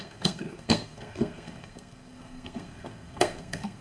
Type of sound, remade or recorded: remade